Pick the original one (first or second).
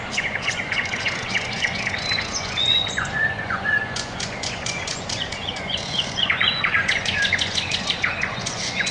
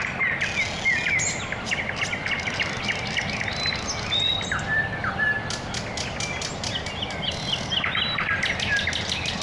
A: second